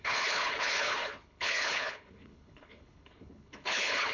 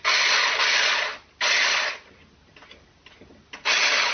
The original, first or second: second